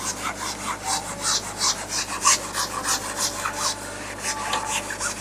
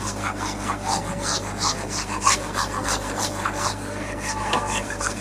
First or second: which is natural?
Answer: first